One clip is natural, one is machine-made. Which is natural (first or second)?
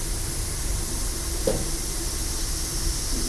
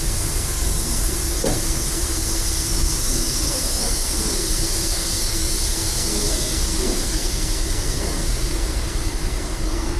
first